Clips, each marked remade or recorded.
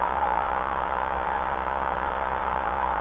remade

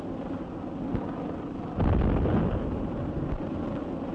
recorded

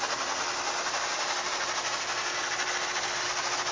recorded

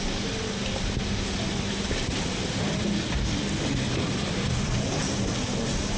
recorded